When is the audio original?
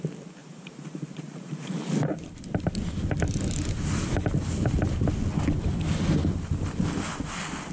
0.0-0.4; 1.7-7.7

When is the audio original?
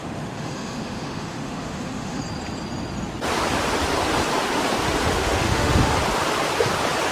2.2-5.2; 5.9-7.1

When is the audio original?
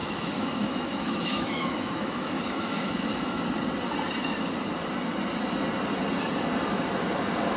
3.4-7.6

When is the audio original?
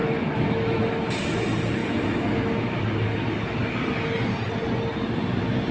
0.9-1.8; 2.8-5.7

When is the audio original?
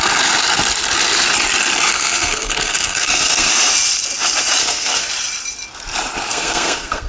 0.0-1.9; 3.5-4.6; 5.1-6.3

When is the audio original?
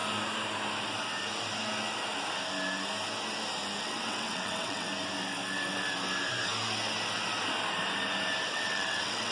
0.0-3.8; 4.9-8.5